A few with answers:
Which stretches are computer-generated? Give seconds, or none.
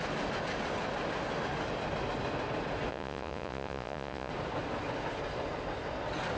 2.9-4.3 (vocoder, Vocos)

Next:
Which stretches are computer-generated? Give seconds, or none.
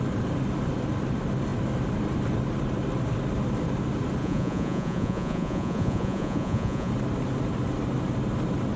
4.2-6.9 (vocoder, Vocos)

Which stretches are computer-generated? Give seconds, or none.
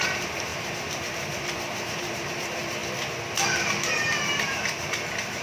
0.0-2.8 (vocoder, BigVGAN v2); 4.4-5.4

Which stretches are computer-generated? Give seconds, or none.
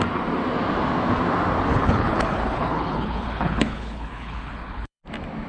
1.7-5.0 (codec, HILCodec)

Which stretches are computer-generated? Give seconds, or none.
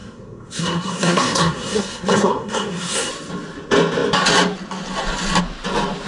0.0-3.1 (codec, SNAC)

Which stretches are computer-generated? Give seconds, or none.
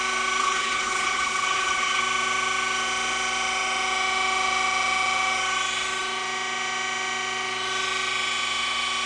0.4-2.0 (codec, HILCodec)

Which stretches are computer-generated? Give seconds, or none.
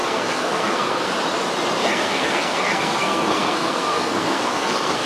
0.0-1.1 (codec, SNAC); 1.8-5.1